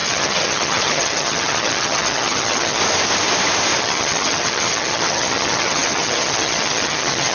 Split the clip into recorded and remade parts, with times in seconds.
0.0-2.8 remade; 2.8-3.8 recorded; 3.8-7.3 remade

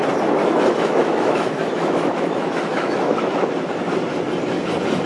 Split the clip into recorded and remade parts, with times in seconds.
0.0-0.4 recorded; 0.4-3.5 remade; 3.5-5.1 recorded

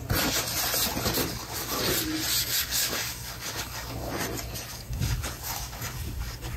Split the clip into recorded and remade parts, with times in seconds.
0.0-1.2 recorded; 1.2-1.8 remade; 1.8-2.4 recorded; 2.4-4.1 remade; 4.1-4.7 recorded; 4.7-6.6 remade